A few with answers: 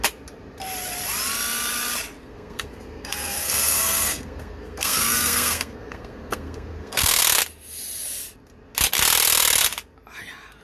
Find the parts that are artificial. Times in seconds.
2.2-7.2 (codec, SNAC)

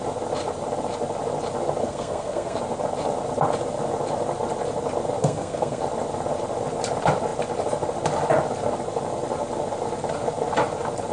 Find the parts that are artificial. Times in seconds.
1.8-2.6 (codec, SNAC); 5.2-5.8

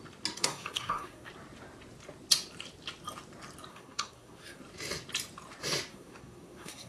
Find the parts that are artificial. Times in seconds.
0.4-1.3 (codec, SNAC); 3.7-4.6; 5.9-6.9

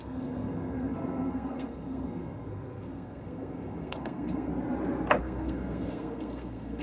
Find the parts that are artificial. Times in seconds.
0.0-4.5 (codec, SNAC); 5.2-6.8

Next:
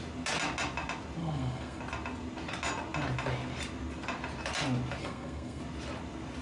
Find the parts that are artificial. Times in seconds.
1.2-1.8 (codec, SNAC); 5.0-5.6

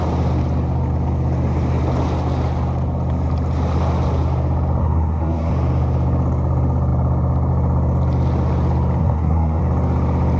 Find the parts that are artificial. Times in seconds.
4.8-5.5 (codec, SNAC); 9.0-9.6